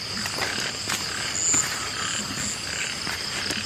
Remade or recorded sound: recorded